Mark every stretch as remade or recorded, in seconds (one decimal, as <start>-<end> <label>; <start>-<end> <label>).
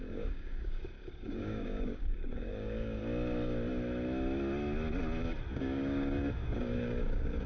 0.0-3.0 remade; 3.0-5.5 recorded; 5.5-7.5 remade